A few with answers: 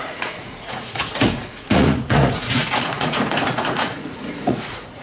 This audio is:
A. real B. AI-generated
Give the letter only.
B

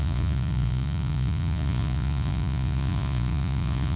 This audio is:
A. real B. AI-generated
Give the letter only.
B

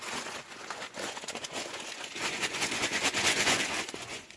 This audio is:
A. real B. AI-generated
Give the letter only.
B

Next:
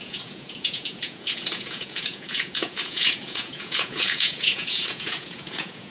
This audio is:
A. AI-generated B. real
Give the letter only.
A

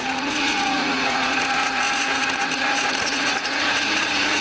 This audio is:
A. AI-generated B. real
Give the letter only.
A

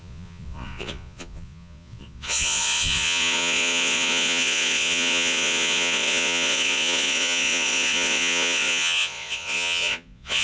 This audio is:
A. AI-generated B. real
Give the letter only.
A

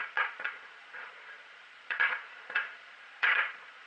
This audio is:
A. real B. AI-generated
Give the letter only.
B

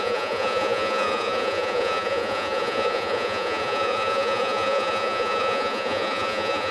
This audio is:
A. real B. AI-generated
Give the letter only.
B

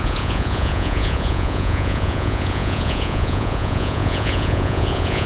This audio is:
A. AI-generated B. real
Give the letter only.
A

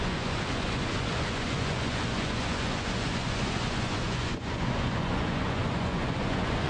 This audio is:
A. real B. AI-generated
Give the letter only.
B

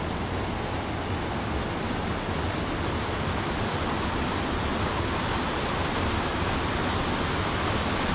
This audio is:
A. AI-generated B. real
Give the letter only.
B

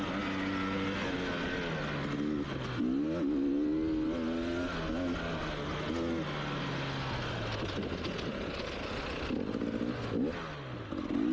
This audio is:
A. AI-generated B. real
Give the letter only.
B